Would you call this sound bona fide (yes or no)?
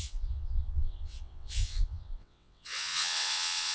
no